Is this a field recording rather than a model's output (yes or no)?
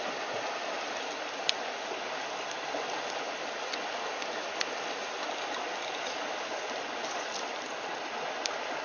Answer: yes